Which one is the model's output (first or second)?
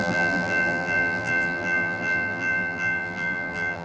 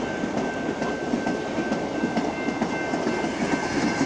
first